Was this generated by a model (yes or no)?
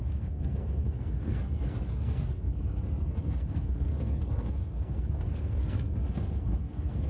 yes